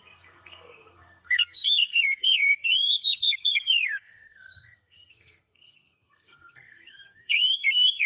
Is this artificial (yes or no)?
yes